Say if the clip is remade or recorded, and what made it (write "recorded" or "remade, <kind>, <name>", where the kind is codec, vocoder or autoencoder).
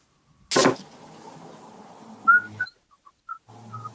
recorded